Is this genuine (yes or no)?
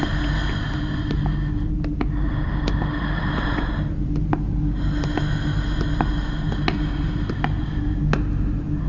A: yes